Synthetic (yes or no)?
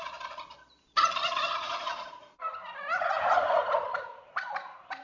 yes